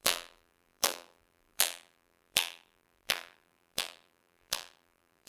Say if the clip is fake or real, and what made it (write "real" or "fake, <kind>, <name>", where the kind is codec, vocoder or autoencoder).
fake, vocoder, BigVGAN v2